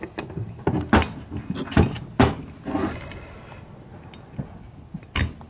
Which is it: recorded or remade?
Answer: recorded